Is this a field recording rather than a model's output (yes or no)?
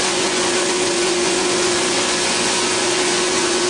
no